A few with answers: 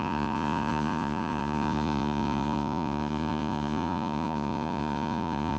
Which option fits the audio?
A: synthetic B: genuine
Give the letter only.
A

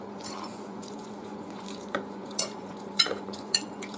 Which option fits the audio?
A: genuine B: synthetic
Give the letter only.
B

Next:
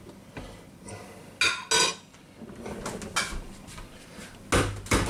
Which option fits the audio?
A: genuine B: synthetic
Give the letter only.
A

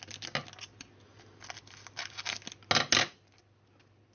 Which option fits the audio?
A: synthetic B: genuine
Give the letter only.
B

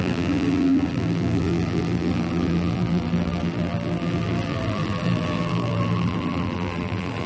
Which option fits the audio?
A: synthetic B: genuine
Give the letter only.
A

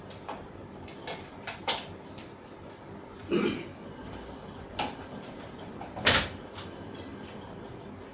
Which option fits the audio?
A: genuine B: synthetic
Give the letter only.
B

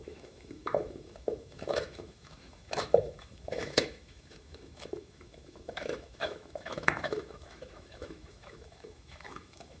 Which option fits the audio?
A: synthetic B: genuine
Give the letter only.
A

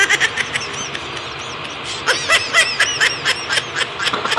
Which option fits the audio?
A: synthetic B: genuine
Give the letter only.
B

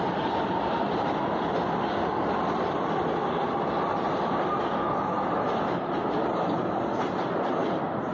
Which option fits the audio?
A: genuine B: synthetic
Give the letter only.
A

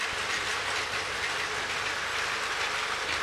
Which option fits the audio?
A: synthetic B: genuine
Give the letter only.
B